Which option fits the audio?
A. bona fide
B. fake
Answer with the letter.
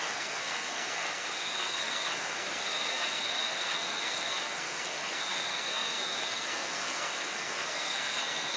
B